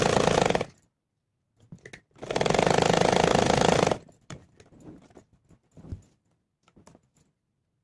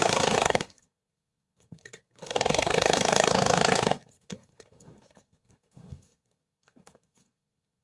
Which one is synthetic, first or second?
second